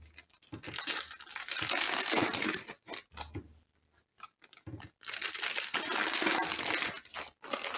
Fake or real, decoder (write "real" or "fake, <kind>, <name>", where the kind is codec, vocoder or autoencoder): real